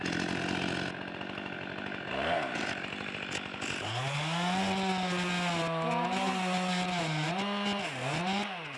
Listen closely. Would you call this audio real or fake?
real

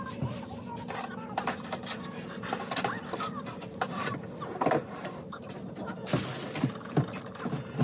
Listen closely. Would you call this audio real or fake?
real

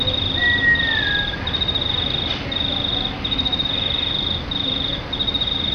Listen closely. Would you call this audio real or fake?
real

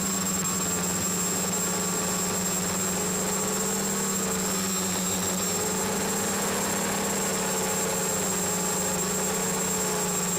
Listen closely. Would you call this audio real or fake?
real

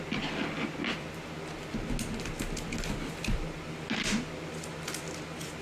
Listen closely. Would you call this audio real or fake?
real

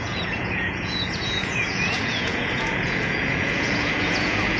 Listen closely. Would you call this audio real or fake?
fake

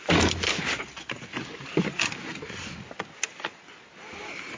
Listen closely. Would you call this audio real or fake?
real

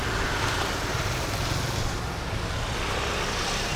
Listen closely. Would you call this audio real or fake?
real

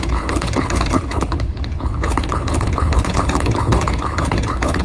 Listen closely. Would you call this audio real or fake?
fake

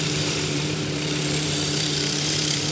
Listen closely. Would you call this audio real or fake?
fake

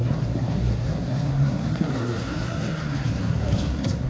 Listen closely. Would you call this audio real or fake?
fake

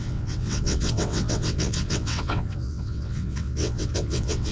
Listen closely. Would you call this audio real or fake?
fake